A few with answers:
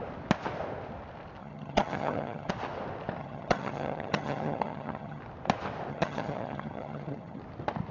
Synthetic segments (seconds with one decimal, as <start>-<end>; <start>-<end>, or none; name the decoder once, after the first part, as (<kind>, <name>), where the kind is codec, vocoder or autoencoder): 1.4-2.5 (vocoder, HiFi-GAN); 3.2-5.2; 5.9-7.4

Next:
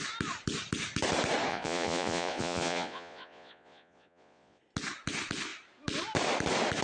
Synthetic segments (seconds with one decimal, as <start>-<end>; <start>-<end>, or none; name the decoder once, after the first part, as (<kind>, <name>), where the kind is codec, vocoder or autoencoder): 1.5-4.6 (vocoder, Vocos)

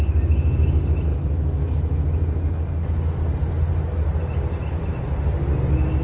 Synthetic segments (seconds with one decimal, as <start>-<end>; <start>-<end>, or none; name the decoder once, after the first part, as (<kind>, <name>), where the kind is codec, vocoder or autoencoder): none

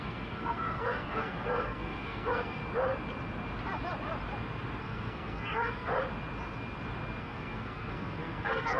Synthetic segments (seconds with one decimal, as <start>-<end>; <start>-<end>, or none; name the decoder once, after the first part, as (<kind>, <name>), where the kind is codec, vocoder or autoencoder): 0.0-2.6 (codec, SNAC); 4.8-5.9; 7.2-8.8

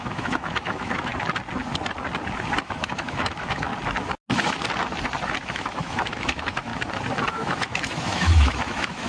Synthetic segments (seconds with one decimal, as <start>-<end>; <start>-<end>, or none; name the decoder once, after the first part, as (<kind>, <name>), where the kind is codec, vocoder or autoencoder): 0.0-1.1 (autoencoder, DAC-VAE); 2.6-3.7; 5.5-6.7; 7.3-9.1

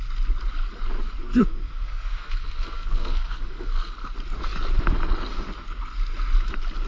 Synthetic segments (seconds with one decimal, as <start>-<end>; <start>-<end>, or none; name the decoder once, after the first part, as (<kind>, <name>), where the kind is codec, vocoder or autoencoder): 1.2-3.9 (codec, SNAC)